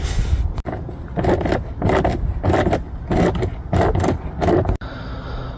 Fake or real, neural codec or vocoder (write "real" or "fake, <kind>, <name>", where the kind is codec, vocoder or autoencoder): real